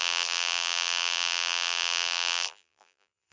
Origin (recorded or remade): remade